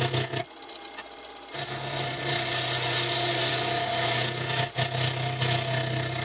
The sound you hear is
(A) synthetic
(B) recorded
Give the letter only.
B